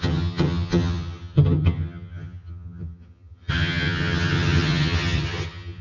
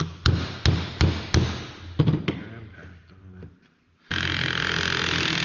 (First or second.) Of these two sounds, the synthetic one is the first